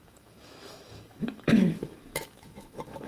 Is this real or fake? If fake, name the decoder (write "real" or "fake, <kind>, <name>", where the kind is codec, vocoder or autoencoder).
fake, autoencoder, DAC-VAE